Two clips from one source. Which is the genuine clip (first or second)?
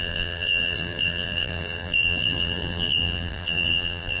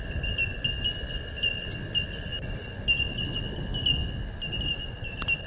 second